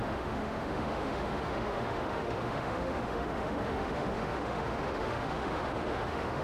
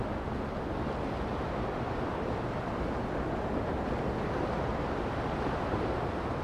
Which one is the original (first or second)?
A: second